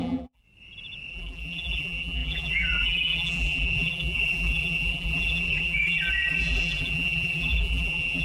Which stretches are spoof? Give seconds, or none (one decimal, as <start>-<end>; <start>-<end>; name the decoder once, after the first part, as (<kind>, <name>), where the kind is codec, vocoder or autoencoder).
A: 0.0-0.4 (vocoder, BigVGAN v2); 1.1-8.2